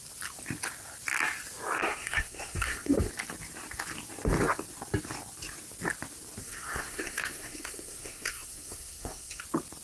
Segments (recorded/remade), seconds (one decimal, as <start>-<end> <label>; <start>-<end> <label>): 0.0-1.8 recorded; 1.8-3.1 remade; 3.1-6.4 recorded; 6.4-9.4 remade; 9.4-9.8 recorded